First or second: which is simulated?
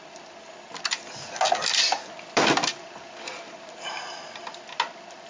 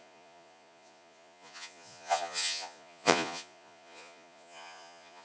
second